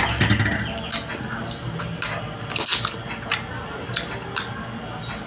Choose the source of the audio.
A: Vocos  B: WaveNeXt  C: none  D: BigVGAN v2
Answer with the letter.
C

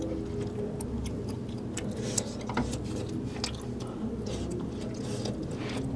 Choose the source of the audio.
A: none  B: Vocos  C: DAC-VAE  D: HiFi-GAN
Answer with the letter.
A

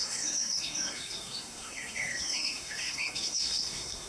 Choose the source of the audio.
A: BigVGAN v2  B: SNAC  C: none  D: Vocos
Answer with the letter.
B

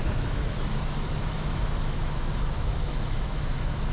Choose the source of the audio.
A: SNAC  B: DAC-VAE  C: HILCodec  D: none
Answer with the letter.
B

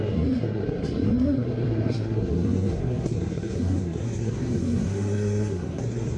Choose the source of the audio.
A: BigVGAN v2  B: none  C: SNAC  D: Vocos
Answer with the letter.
C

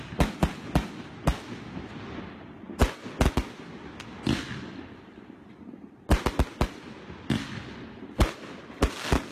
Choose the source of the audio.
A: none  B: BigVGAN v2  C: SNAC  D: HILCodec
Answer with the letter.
A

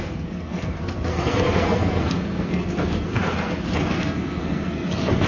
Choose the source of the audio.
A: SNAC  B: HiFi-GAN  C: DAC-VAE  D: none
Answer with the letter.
A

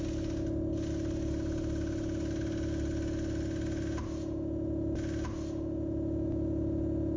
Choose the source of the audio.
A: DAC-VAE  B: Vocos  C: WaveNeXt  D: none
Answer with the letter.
D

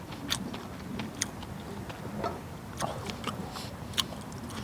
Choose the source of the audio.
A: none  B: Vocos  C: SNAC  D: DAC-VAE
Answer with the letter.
A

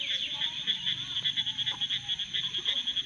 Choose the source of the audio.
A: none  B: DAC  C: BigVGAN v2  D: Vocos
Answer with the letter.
A